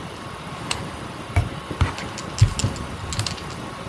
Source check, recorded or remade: recorded